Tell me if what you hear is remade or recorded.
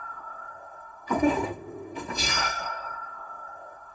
remade